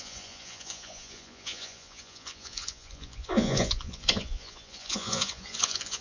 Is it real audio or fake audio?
fake